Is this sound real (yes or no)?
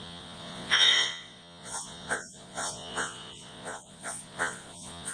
no